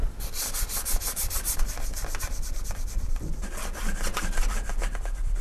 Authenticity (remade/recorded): remade